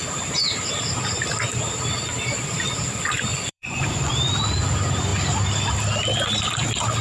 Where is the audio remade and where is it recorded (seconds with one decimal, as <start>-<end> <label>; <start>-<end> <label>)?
0.0-3.3 recorded; 3.3-4.1 remade; 4.1-7.0 recorded